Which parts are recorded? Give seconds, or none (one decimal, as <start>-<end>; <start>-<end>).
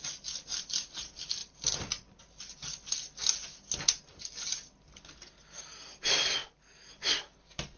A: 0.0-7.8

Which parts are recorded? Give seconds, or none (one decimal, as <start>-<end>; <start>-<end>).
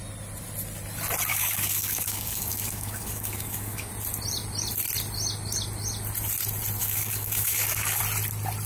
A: 0.0-1.3; 3.9-6.8; 8.0-8.7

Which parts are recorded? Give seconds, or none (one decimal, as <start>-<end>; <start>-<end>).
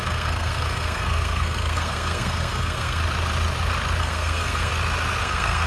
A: 3.0-4.0; 4.7-5.2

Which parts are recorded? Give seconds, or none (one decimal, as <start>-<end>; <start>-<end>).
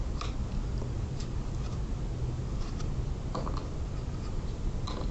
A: 0.0-5.1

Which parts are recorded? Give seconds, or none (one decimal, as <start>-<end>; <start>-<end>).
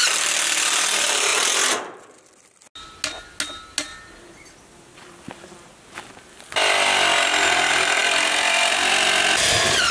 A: 0.0-9.9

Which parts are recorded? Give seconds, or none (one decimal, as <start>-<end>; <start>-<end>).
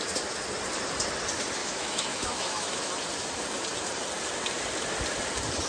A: 0.0-1.6; 2.9-5.7